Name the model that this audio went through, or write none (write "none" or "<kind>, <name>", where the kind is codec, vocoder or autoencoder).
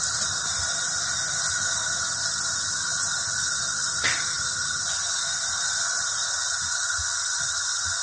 none